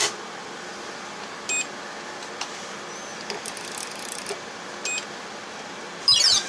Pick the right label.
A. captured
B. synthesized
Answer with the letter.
A